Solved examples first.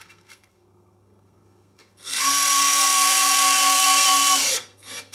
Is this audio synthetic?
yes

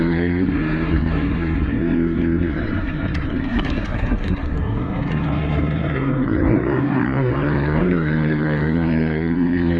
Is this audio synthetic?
yes